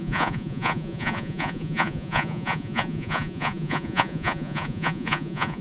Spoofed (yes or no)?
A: yes